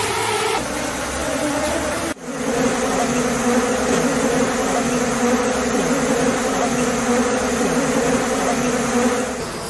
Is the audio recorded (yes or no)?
yes